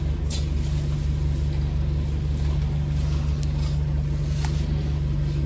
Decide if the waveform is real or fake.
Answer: real